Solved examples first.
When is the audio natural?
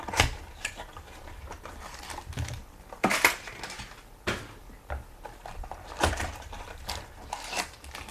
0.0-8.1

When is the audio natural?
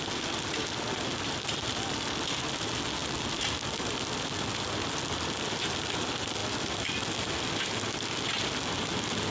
0.0-9.3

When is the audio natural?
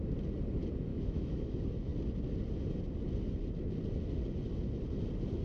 0.0-0.9; 1.5-5.4